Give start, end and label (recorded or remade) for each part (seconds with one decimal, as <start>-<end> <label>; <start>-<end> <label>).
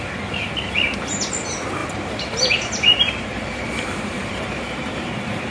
0.0-1.8 recorded; 1.8-5.1 remade; 5.1-5.5 recorded